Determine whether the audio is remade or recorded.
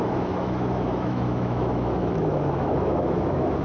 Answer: remade